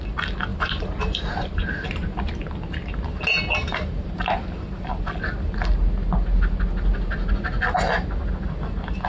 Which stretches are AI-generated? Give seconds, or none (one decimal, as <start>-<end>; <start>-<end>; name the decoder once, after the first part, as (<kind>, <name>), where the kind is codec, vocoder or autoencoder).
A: 0.5-2.3 (vocoder, BigVGAN v2); 3.6-5.1